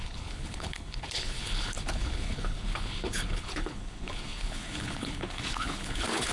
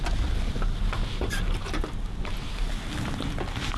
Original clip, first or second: second